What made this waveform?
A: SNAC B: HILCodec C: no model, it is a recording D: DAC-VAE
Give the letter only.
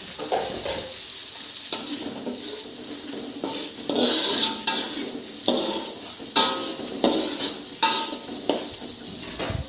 C